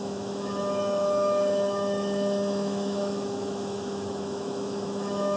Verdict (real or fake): fake